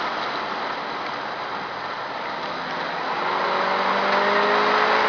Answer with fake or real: real